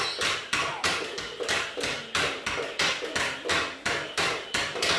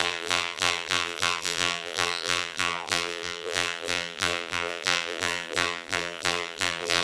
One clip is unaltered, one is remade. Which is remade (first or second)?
second